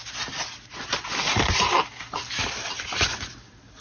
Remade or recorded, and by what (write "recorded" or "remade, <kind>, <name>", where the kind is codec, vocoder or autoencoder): recorded